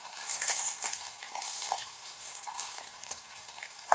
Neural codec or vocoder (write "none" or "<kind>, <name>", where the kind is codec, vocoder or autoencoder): codec, SNAC